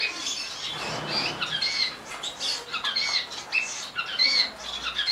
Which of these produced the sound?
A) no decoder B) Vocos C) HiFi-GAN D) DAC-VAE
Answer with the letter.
A